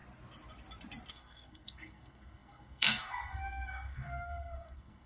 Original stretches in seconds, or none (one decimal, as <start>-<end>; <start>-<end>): 0.0-1.1

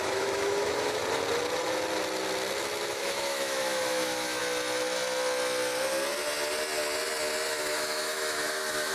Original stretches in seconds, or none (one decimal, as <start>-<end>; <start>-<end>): 1.0-2.9; 4.4-7.5

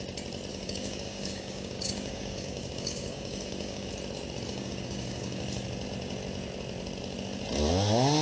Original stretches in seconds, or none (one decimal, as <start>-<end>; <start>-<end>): 0.0-0.5; 3.9-4.5; 5.4-8.2

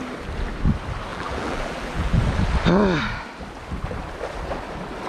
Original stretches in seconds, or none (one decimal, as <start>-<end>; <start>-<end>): 0.0-1.1; 2.2-5.1

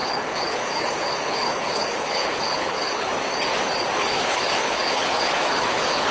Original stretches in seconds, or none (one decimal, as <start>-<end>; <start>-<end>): 3.1-4.0